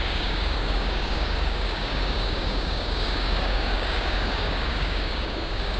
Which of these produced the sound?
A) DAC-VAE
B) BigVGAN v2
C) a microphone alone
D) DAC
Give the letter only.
D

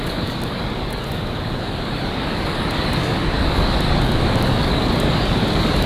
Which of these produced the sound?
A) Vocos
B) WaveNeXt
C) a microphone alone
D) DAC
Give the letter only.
D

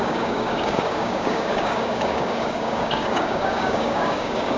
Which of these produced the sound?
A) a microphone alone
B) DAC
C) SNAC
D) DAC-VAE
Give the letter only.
B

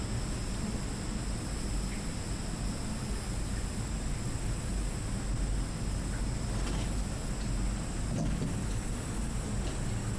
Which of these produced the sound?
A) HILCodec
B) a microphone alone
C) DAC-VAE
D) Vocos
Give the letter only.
B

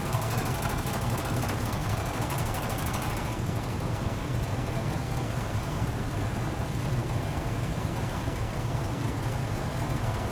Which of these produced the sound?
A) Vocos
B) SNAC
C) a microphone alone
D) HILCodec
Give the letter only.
B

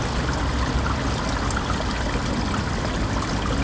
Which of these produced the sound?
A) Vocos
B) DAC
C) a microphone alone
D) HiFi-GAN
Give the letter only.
C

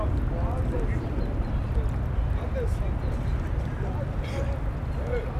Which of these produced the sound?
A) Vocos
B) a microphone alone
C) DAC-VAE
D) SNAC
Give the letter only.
B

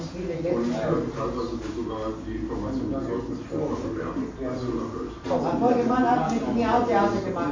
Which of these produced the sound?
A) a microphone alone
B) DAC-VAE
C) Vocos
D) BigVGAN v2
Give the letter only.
A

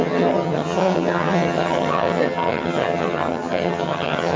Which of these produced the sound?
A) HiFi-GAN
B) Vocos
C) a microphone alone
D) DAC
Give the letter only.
A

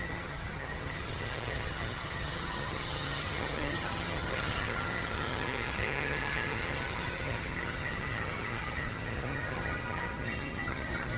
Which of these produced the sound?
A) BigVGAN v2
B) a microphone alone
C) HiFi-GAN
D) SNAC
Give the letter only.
C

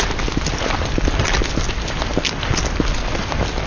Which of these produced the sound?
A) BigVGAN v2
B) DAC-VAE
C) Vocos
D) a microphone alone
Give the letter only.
D